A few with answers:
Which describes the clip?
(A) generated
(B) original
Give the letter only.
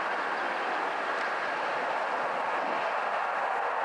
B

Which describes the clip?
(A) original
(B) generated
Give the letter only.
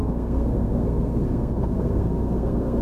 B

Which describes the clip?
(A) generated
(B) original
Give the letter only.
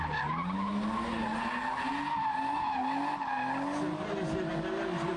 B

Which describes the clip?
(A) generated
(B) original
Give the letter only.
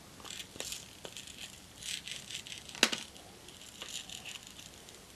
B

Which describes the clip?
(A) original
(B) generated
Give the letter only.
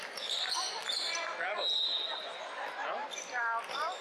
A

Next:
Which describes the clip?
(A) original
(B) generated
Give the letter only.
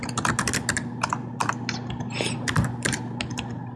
A